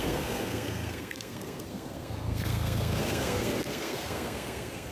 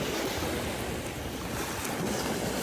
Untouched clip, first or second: second